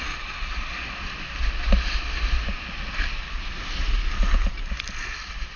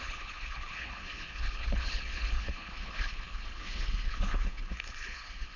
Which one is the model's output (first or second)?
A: second